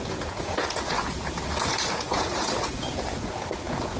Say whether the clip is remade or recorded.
remade